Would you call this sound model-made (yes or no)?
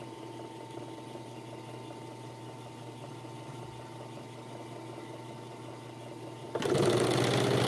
no